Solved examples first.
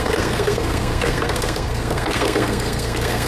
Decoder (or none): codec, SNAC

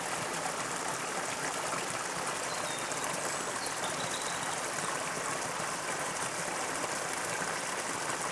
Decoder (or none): none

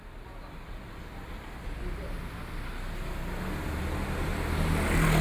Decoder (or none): none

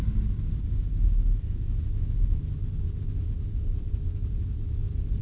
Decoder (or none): none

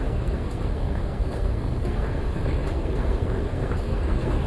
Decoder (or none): codec, SNAC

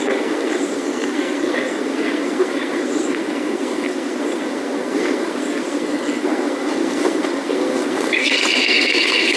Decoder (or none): codec, SNAC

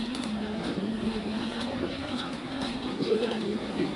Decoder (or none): codec, SNAC